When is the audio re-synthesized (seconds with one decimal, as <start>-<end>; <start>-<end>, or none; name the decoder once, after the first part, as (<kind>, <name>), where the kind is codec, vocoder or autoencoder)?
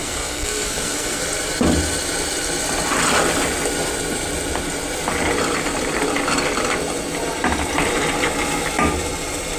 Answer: 0.0-1.2 (codec, SNAC)